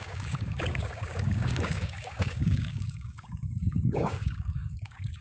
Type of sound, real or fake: fake